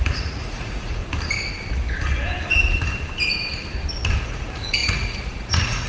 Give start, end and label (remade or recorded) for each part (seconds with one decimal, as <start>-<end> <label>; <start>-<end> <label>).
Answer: 0.0-1.0 remade; 1.0-4.2 recorded; 4.2-5.9 remade